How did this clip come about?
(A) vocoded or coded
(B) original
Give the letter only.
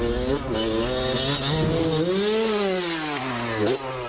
B